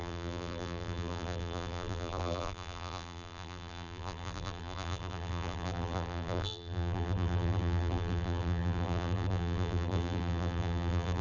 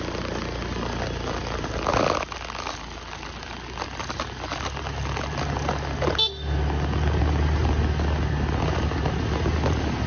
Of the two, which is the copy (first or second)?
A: first